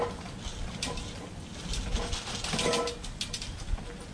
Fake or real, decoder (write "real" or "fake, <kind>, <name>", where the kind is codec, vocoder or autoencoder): real